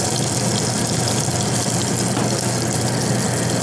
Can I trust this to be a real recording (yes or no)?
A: yes